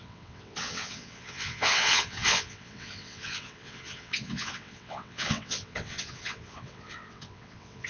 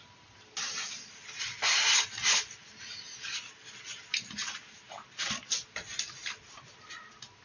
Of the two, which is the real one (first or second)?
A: second